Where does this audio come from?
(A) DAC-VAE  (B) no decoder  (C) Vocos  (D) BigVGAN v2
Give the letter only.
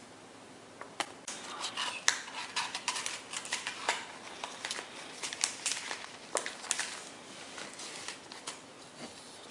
B